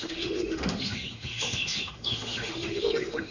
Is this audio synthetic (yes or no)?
yes